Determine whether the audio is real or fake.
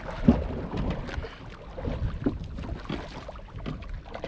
real